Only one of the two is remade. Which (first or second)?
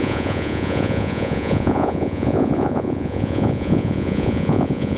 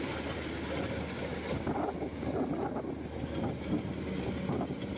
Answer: first